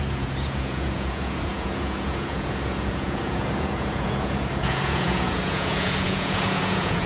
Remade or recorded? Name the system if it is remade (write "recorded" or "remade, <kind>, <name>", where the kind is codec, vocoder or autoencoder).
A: remade, vocoder, Vocos